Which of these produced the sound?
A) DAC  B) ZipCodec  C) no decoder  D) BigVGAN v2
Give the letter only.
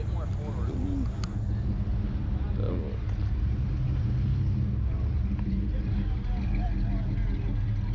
C